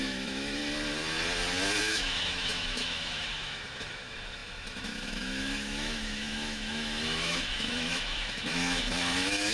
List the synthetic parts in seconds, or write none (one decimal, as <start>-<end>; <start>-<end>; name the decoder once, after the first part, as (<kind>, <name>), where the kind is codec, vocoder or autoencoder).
0.0-0.6 (autoencoder, DAC-VAE); 1.8-9.5